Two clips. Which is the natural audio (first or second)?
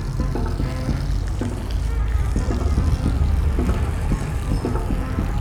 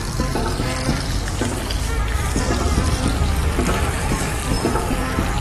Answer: first